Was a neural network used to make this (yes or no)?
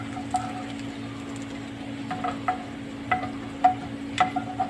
no